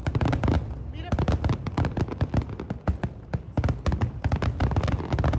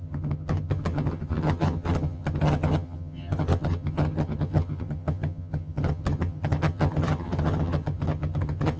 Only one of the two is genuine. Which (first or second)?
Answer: first